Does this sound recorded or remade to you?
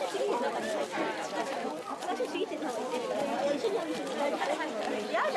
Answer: recorded